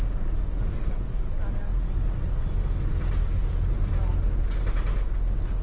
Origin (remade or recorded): recorded